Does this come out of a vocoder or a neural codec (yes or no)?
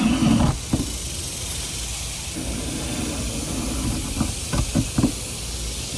no